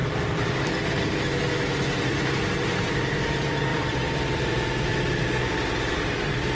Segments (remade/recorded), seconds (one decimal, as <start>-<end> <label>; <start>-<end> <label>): 0.0-1.1 remade; 1.1-3.7 recorded; 3.7-5.1 remade; 5.1-6.5 recorded